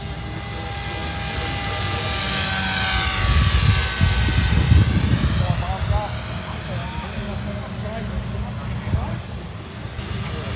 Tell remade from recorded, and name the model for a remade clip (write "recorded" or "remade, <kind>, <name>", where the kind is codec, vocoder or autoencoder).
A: recorded